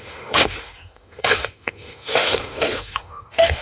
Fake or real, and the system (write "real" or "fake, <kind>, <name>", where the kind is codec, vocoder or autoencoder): fake, autoencoder, DAC-VAE